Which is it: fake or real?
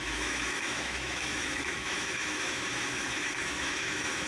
fake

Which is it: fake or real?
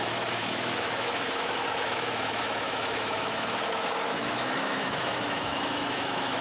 fake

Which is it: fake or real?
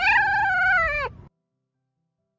real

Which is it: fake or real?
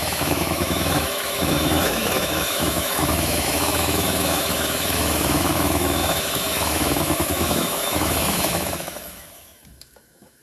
fake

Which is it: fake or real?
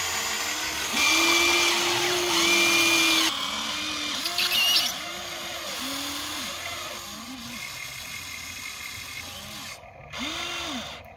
real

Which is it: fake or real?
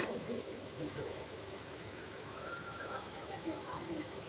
fake